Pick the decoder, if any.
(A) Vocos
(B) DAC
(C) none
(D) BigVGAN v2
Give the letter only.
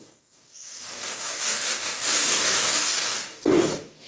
B